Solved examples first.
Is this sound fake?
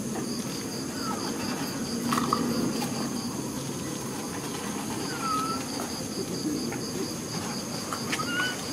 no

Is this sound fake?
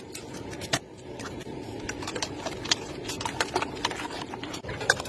yes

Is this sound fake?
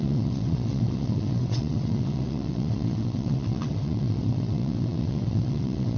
yes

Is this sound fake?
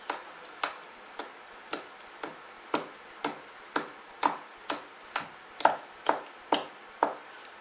no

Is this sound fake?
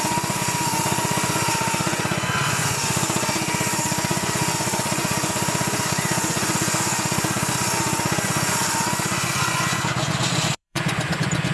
yes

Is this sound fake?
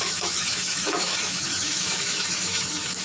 yes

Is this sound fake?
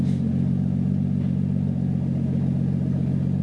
no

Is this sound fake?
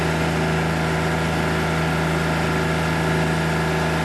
no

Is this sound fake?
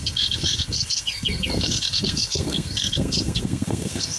yes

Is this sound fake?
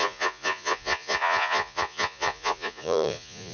yes